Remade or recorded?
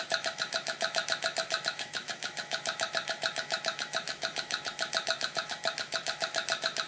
remade